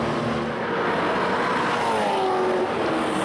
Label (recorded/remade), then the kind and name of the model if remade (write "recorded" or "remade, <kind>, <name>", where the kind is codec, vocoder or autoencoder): recorded